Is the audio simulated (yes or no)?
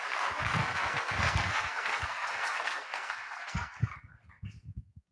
yes